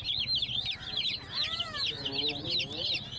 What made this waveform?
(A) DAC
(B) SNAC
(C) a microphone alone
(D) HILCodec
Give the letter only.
C